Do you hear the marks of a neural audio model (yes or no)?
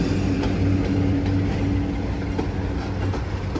no